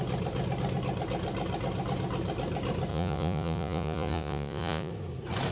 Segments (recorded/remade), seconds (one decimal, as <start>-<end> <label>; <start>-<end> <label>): 0.0-2.9 recorded; 2.9-4.9 remade; 4.9-5.5 recorded